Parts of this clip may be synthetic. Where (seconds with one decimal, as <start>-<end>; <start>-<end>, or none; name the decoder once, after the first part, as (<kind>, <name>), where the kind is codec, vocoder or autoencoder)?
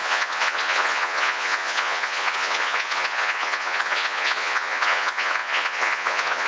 0.0-6.5 (vocoder, Vocos)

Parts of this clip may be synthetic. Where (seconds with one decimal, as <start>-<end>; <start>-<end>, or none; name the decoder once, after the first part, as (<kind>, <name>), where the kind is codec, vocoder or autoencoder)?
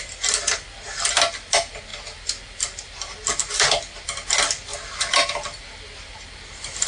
none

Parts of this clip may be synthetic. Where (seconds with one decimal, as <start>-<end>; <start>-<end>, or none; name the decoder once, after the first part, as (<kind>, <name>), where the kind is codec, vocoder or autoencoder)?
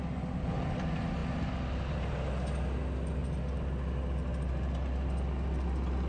none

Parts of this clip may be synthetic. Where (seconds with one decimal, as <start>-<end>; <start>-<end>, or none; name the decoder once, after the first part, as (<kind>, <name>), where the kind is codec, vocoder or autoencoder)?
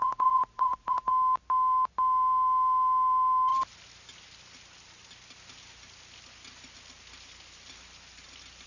0.0-1.1 (vocoder, Vocos)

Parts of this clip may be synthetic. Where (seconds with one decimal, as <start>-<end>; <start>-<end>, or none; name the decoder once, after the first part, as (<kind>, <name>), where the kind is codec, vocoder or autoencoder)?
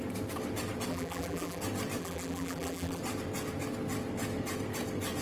0.9-1.6 (vocoder, BigVGAN v2); 2.0-3.0